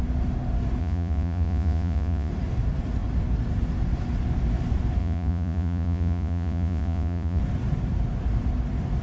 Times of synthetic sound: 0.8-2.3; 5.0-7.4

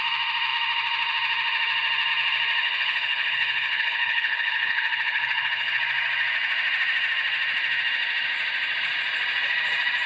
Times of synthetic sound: 2.6-5.8

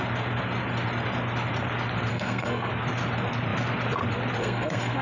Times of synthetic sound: 2.1-2.7; 4.4-5.0

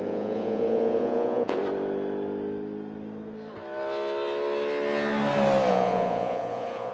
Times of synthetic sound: 0.0-1.6; 5.7-6.9

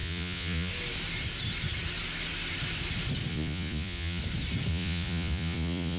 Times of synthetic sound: 0.0-0.7; 3.3-4.2; 4.7-6.0